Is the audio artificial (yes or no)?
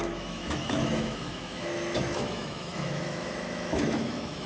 yes